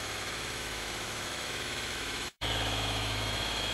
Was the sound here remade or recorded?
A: remade